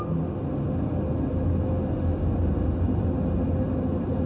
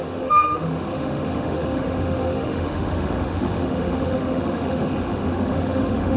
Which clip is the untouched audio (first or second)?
first